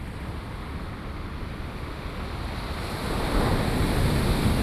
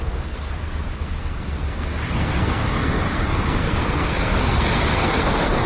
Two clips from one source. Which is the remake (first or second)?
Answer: second